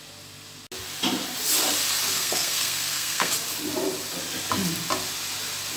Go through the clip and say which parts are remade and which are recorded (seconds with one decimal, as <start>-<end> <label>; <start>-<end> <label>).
0.0-2.1 recorded; 2.1-3.3 remade; 3.3-5.8 recorded